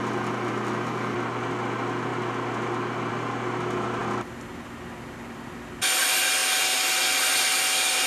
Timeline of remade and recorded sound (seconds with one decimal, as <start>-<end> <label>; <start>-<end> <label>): 0.0-8.1 recorded